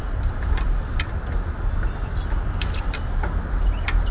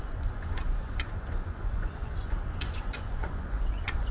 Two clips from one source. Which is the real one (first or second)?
first